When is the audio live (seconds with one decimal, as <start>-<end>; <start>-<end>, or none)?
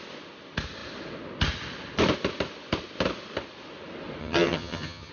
0.0-4.2